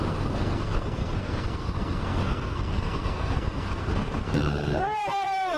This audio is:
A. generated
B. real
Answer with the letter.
A